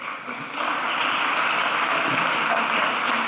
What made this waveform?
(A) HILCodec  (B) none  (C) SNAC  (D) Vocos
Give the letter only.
B